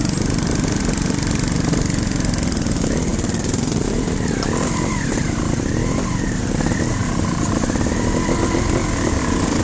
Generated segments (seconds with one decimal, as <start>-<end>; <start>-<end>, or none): 3.1-6.4